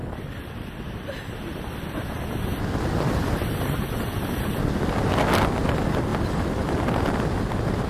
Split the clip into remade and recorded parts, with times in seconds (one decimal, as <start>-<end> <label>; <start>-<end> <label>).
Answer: 0.0-7.9 recorded